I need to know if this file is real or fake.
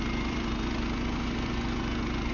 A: fake